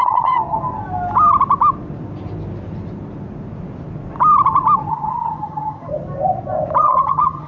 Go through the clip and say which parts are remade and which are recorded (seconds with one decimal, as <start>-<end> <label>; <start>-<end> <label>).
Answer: 0.0-0.4 remade; 0.4-4.9 recorded; 4.9-5.9 remade; 5.9-6.8 recorded; 6.8-7.5 remade

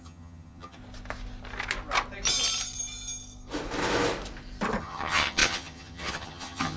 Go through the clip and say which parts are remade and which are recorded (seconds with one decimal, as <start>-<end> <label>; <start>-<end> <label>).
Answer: 0.0-0.8 remade; 0.8-4.8 recorded; 4.8-6.8 remade

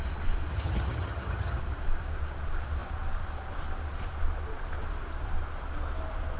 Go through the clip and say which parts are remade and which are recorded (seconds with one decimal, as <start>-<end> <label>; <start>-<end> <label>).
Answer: 0.0-0.5 recorded; 0.5-1.6 remade; 1.6-6.4 recorded

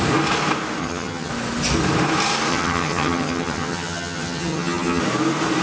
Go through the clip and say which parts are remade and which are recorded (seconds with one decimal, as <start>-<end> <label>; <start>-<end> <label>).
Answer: 0.0-0.8 recorded; 0.8-1.3 remade; 1.3-2.5 recorded; 2.5-5.0 remade; 5.0-5.6 recorded

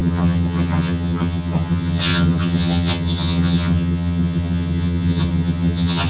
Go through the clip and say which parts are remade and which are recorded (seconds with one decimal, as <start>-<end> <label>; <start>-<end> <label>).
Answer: 0.0-6.1 remade